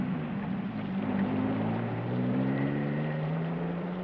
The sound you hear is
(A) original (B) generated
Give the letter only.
B